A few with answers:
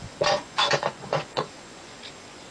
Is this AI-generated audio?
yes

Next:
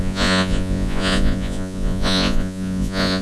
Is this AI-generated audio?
yes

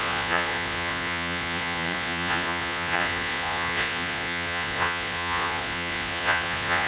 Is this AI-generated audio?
yes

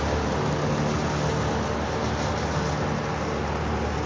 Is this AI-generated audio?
no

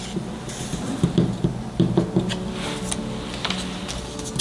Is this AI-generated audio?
no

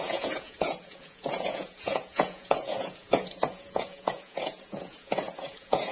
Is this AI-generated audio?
yes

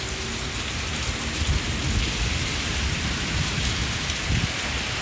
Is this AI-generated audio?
no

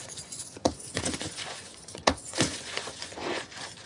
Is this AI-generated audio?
yes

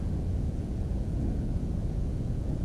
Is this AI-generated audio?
yes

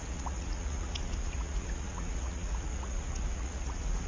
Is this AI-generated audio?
yes